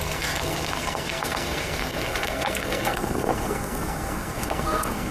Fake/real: fake